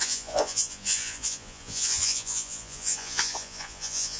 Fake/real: fake